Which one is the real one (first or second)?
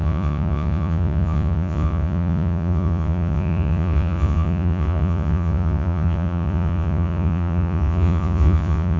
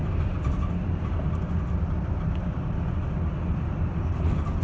second